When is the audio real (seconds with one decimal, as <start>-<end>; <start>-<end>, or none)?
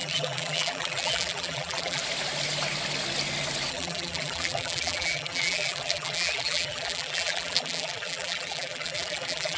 2.0-3.7